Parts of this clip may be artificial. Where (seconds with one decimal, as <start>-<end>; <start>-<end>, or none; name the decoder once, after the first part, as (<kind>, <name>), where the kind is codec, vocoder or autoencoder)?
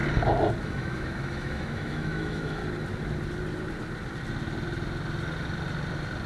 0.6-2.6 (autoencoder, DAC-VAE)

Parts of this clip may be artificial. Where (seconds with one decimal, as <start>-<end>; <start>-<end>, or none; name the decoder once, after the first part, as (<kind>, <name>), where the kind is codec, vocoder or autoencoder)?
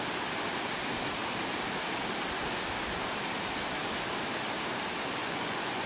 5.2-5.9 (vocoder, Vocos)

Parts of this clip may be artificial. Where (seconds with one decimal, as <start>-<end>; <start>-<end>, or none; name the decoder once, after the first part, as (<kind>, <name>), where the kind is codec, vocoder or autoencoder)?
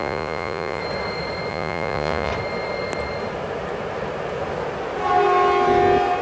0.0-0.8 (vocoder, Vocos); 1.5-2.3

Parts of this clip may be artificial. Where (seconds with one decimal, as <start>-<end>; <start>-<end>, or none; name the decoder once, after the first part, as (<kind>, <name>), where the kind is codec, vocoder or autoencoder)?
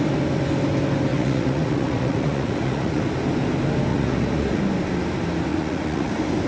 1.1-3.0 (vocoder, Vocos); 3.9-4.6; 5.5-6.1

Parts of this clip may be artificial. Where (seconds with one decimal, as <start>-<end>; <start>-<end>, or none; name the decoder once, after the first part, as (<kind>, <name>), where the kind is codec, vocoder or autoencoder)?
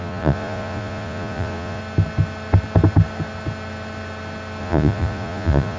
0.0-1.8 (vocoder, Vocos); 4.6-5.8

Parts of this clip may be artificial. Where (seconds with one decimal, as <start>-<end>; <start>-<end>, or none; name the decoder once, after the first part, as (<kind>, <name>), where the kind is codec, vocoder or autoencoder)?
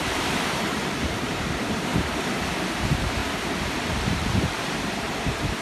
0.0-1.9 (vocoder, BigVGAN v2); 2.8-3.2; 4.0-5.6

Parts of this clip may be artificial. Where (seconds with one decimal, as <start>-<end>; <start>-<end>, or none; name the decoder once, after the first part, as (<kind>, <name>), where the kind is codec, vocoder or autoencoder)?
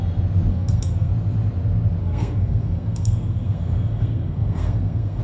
0.5-1.1 (codec, SNAC); 2.0-5.2